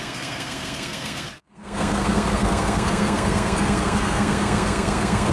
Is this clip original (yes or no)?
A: no